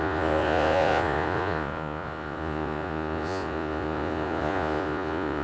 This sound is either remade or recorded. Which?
remade